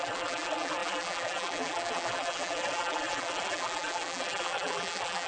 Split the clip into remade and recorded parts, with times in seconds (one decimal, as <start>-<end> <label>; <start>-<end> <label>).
0.0-5.3 remade